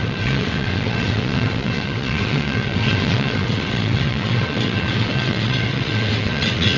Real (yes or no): no